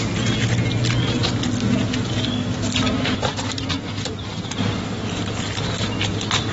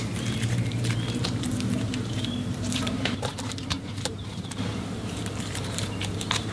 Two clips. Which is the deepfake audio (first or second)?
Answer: second